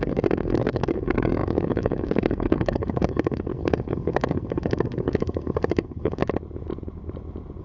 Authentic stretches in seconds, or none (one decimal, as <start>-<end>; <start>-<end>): 6.2-7.6